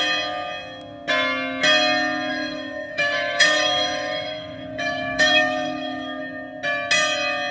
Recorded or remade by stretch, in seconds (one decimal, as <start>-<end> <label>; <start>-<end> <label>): 0.0-2.3 recorded; 2.3-6.2 remade; 6.2-7.5 recorded